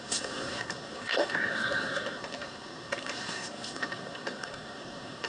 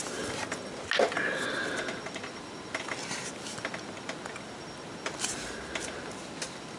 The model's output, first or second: first